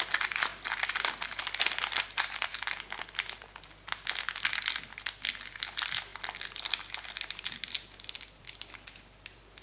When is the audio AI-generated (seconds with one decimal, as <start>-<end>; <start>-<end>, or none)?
0.0-2.5; 5.3-9.6

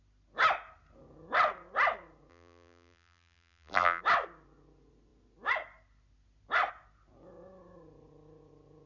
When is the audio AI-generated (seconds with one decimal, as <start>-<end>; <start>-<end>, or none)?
2.3-4.0

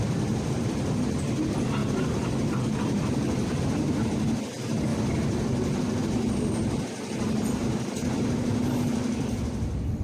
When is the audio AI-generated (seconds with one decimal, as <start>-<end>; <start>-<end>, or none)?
0.0-4.9; 6.0-7.6; 8.4-10.0